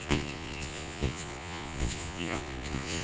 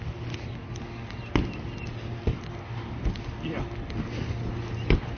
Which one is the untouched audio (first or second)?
second